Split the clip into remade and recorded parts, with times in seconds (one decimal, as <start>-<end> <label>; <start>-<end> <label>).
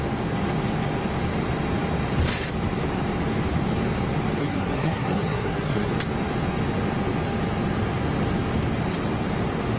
0.0-4.4 recorded; 4.4-5.9 remade; 5.9-9.8 recorded